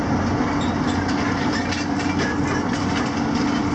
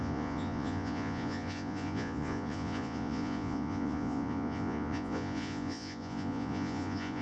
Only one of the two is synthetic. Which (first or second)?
second